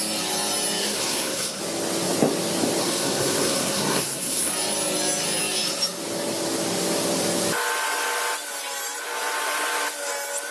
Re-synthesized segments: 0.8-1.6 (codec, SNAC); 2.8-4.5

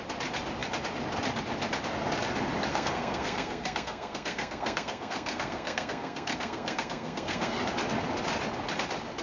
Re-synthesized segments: 2.7-7.6 (codec, SNAC)